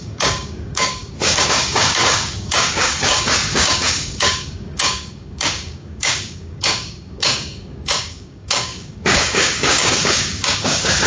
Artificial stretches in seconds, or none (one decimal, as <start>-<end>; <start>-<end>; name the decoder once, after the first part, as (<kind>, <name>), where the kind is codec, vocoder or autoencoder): 0.0-11.1 (codec, DAC)